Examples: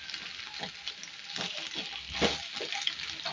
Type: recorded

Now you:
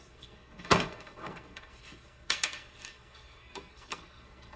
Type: remade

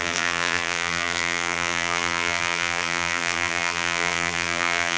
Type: remade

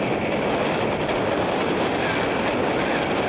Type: recorded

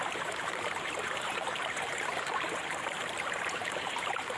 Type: remade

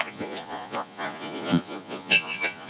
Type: remade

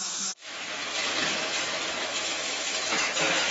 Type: remade